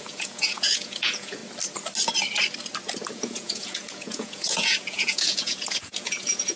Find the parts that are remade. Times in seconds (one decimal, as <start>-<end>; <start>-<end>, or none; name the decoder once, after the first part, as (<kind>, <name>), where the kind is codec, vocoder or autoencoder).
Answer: 0.0-1.4 (vocoder, Vocos); 3.1-6.6